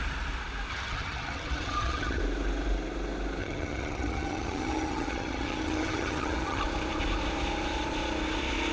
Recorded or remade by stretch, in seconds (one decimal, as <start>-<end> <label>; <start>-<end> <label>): 0.0-0.7 recorded; 0.7-2.2 remade; 2.2-3.4 recorded; 3.4-6.6 remade; 6.6-8.7 recorded